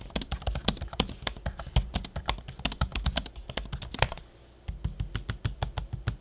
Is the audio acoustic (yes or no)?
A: yes